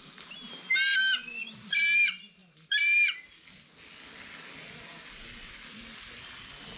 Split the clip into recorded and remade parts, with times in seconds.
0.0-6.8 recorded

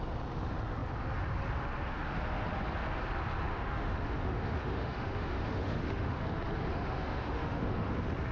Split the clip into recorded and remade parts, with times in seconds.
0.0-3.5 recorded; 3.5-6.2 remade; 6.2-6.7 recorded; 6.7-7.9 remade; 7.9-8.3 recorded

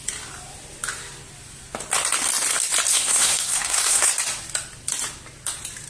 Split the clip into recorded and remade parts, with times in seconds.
0.0-2.9 recorded; 2.9-4.1 remade; 4.1-5.9 recorded

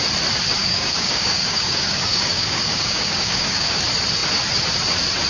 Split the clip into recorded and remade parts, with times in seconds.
0.0-0.6 recorded; 0.6-3.8 remade; 3.8-5.3 recorded